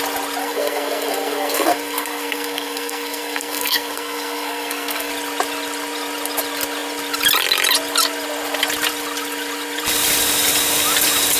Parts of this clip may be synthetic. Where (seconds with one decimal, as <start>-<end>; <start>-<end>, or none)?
0.4-5.1